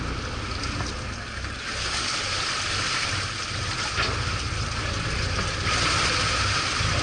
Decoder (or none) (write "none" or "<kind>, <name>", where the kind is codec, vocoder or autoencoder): none